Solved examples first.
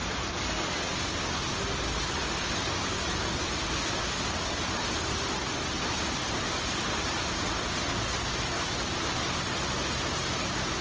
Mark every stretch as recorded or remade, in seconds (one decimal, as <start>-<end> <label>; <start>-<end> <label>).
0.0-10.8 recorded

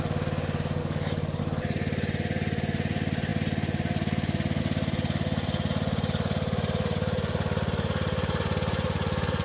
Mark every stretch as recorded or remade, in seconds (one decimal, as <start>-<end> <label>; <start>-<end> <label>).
0.0-0.8 recorded; 0.8-1.4 remade; 1.4-9.4 recorded

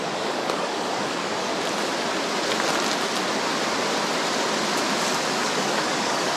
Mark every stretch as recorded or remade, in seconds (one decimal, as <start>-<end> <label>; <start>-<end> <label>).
0.0-1.5 remade; 1.5-5.3 recorded; 5.3-6.4 remade